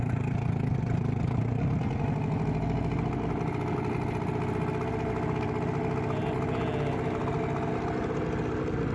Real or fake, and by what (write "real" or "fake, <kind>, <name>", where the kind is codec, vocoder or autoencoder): real